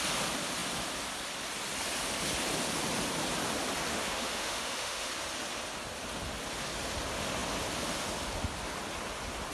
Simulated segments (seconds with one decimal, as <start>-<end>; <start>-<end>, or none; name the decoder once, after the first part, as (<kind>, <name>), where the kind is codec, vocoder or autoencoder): 3.9-5.1 (autoencoder, DAC-VAE)